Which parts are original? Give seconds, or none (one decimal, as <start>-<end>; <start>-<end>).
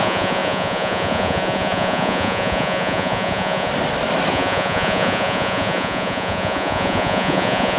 3.7-4.3